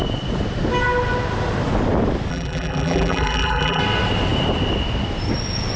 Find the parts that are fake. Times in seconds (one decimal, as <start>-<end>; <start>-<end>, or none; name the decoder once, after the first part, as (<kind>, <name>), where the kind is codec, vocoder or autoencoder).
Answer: 2.3-3.8 (vocoder, BigVGAN v2)